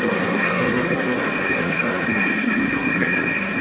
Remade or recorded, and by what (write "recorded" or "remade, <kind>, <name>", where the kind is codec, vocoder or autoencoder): remade, codec, SNAC